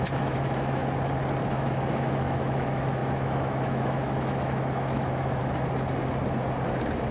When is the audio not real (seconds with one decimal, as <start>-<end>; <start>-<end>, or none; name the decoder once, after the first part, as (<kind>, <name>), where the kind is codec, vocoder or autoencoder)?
0.0-0.8 (autoencoder, DAC-VAE); 1.4-5.4